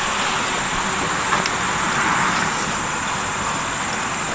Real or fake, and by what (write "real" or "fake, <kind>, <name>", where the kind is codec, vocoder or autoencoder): real